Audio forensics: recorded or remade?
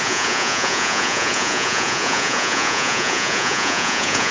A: remade